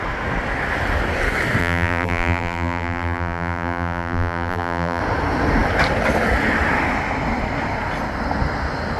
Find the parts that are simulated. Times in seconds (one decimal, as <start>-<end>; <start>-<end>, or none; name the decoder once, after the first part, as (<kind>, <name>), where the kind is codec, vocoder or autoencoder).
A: 1.6-5.0 (vocoder, BigVGAN v2)